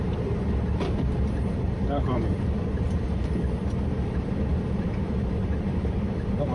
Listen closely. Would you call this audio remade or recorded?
remade